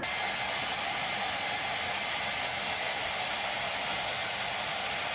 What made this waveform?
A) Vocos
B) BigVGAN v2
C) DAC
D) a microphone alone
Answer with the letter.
D